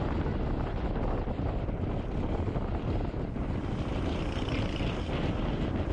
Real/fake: real